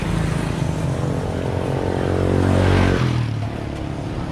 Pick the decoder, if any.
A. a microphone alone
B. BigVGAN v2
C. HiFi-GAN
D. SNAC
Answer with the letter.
A